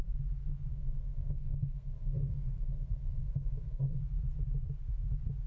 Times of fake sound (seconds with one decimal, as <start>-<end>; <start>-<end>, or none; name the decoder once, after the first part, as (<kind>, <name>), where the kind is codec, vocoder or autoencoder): 0.7-4.0 (codec, SNAC)

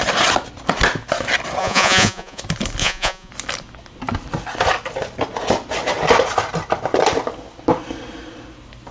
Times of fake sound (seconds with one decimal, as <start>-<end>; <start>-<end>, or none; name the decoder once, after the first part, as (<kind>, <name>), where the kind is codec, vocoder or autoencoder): 1.6-2.4 (vocoder, Vocos); 2.8-3.3

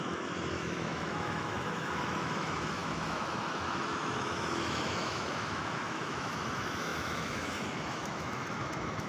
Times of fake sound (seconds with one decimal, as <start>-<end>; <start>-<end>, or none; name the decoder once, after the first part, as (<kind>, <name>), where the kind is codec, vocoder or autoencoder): 0.0-9.1 (autoencoder, DAC-VAE)

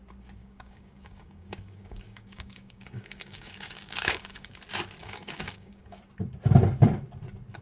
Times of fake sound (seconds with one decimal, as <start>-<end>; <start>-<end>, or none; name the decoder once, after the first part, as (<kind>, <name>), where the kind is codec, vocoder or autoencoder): 0.4-4.6 (codec, DAC); 5.0-6.0

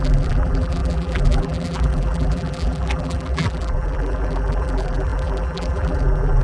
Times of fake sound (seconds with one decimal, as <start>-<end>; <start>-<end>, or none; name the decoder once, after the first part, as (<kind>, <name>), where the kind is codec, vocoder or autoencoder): 0.0-6.4 (vocoder, BigVGAN v2)